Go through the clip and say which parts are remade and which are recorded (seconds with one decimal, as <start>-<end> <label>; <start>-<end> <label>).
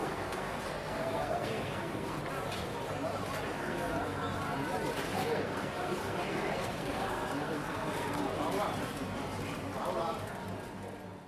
0.0-2.2 remade; 2.2-3.6 recorded; 3.6-4.4 remade; 4.4-5.1 recorded; 5.1-8.2 remade; 8.2-11.3 recorded